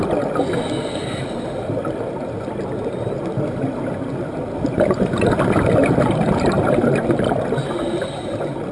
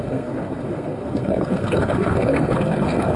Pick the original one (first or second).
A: first